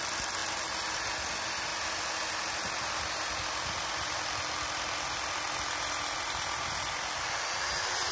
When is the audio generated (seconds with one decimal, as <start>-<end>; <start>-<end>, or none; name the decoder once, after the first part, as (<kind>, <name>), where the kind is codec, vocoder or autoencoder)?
none